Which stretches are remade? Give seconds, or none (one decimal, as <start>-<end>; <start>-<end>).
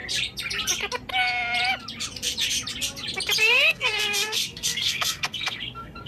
3.4-6.1